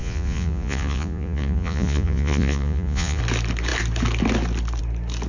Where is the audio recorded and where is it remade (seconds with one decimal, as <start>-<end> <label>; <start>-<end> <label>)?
0.0-3.2 remade; 3.2-5.3 recorded